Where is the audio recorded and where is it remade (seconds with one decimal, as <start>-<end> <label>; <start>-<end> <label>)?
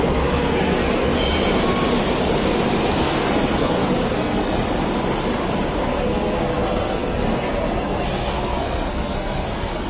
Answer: 0.0-1.1 remade; 1.1-3.0 recorded; 3.0-4.6 remade; 4.6-5.8 recorded; 5.8-9.9 remade